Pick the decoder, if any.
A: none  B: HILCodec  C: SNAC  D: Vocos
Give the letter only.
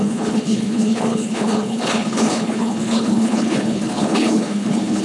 B